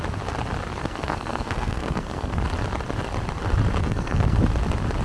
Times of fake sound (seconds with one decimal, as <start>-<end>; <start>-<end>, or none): 0.8-2.4; 3.8-4.4